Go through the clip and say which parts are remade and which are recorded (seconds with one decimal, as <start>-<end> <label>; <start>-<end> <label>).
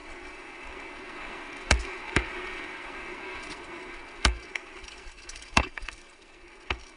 0.0-7.0 remade